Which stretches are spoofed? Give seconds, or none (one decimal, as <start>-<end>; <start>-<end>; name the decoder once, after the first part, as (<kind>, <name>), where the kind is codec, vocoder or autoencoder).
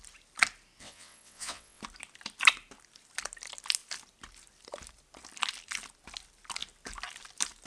0.8-1.8 (vocoder, WaveNeXt)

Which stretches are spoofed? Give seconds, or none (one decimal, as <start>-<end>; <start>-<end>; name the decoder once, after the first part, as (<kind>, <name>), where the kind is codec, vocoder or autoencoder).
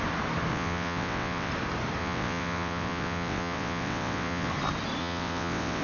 0.5-1.5 (vocoder, WaveNeXt); 2.0-4.5; 5.0-5.8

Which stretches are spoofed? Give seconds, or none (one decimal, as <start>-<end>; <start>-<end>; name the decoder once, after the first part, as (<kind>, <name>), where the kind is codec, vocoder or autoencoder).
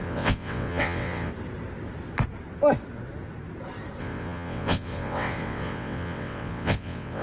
0.0-1.3 (vocoder, WaveNeXt); 4.0-7.2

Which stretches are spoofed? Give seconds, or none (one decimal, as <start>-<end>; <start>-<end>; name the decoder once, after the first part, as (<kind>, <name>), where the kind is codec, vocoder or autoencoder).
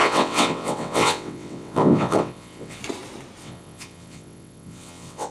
0.0-2.8 (vocoder, WaveNeXt); 3.4-5.3